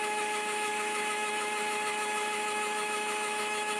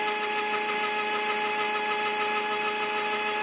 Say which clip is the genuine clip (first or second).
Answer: second